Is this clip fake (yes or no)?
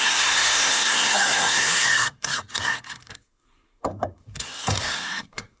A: yes